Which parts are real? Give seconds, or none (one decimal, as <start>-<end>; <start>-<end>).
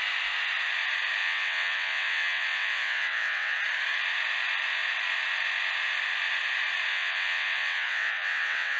0.0-1.2; 3.6-6.9